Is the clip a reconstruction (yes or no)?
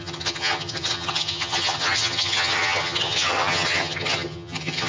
yes